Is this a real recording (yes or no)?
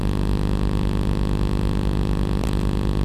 yes